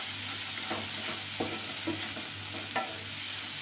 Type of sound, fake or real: real